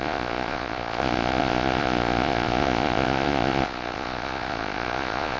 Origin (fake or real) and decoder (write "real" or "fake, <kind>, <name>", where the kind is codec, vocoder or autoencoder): fake, vocoder, Vocos